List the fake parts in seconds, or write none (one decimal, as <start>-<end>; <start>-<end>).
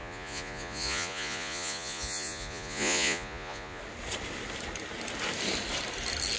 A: 0.0-3.8